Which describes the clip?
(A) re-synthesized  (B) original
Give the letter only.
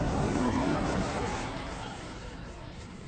A